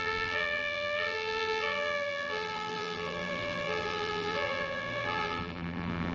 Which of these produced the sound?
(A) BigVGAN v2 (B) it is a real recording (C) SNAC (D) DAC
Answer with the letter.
A